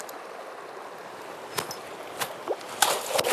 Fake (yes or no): no